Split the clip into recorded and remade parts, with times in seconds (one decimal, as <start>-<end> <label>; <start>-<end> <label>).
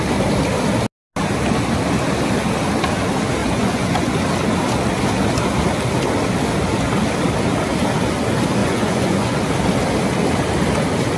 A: 0.0-3.4 recorded; 3.4-4.2 remade; 4.2-8.6 recorded; 8.6-9.4 remade; 9.4-11.2 recorded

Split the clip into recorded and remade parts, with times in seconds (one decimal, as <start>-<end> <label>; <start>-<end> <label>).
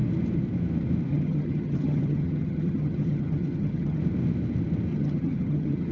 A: 0.0-1.1 recorded; 1.1-4.0 remade; 4.0-4.9 recorded; 4.9-5.9 remade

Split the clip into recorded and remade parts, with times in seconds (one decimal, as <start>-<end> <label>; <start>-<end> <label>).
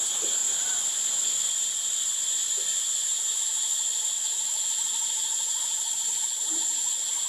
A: 0.0-7.3 recorded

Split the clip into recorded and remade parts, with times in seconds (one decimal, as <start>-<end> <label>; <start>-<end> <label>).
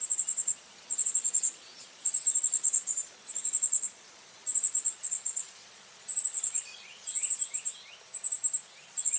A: 0.0-7.4 remade; 7.4-8.7 recorded; 8.7-9.2 remade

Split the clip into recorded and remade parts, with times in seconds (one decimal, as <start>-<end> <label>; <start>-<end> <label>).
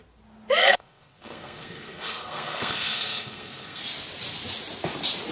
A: 0.0-0.6 recorded; 0.6-3.8 remade; 3.8-5.3 recorded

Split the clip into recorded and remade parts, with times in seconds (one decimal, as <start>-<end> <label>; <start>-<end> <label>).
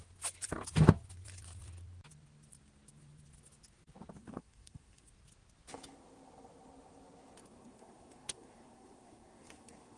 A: 0.0-4.2 recorded; 4.2-5.1 remade; 5.1-7.4 recorded; 7.4-10.0 remade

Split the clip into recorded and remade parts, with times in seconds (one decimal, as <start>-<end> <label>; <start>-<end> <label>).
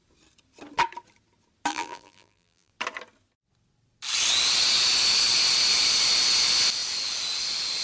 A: 0.0-1.7 recorded; 1.7-2.7 remade; 2.7-7.8 recorded